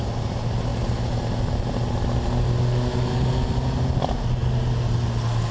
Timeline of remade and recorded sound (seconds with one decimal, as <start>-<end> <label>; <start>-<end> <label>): 0.0-5.5 recorded